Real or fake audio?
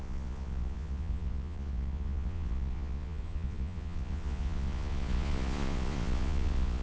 fake